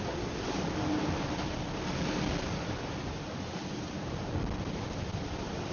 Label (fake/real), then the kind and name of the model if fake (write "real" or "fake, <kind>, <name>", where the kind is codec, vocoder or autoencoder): real